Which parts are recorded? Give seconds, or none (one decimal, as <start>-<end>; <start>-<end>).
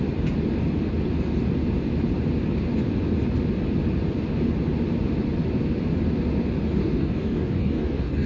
0.0-6.8